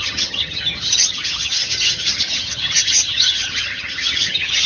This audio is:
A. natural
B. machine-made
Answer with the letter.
B